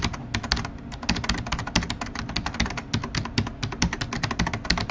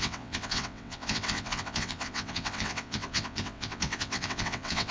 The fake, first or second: second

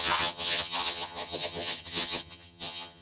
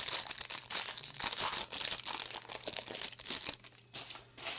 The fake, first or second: first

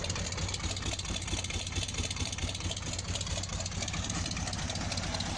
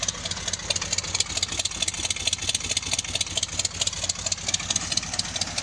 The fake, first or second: first